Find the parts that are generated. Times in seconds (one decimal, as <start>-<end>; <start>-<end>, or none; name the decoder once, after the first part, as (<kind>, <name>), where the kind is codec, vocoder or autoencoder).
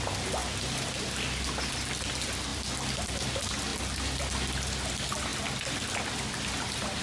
2.5-3.3 (vocoder, BigVGAN v2)